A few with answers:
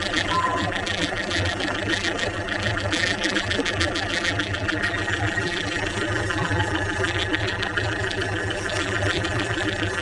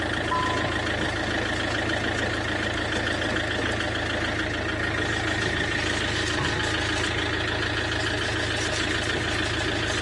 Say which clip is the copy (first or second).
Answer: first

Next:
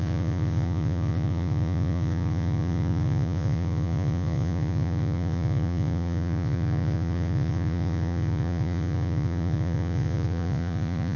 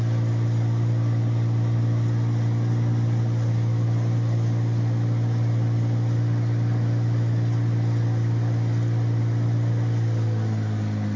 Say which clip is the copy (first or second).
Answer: first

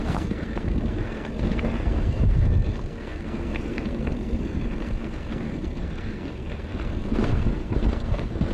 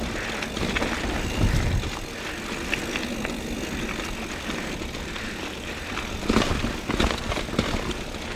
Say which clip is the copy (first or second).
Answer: first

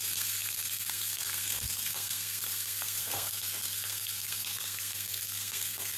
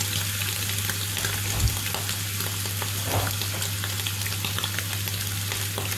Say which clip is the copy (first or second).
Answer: first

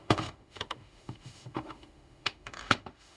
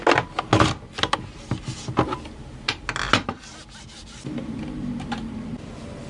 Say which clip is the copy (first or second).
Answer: first